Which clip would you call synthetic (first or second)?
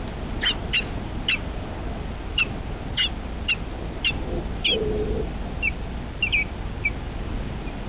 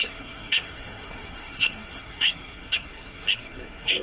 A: second